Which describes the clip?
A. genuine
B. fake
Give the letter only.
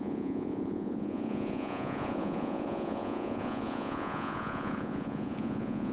B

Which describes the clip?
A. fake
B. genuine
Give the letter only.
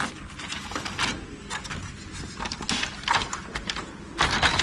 B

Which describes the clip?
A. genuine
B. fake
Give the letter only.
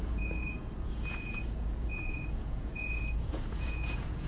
B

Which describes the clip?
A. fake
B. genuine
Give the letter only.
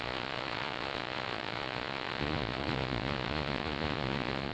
A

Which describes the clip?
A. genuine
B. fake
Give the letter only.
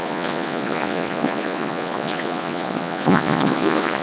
B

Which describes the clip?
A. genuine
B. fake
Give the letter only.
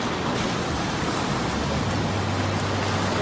A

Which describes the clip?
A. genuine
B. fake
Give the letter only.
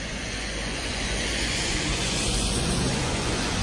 B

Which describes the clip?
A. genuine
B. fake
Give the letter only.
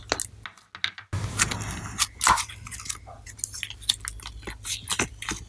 A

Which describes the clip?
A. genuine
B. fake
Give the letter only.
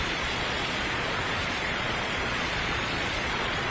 B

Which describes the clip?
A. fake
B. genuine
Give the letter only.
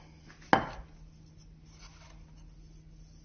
B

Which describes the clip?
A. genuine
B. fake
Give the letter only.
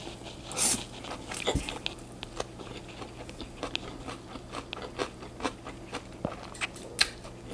A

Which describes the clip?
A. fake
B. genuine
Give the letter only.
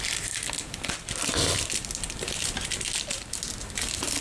B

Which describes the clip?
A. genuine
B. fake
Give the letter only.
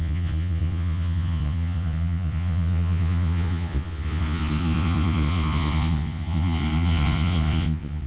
B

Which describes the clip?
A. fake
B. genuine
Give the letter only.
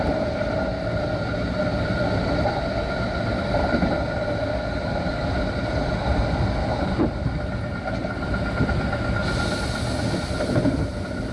B